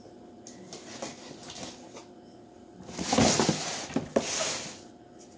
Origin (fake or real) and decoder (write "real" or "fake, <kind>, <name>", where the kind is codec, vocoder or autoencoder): real